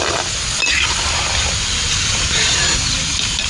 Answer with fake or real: real